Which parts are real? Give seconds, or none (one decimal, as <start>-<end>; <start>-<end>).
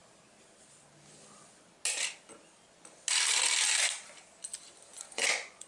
0.0-4.9